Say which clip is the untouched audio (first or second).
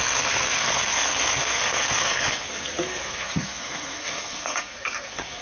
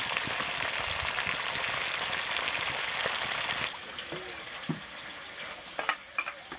second